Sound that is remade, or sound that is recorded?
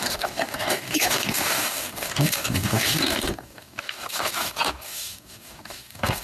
remade